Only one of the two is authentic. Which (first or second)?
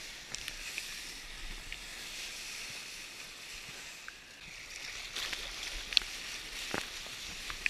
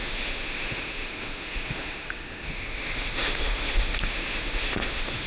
first